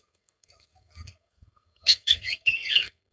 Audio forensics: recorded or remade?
remade